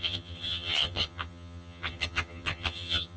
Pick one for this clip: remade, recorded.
remade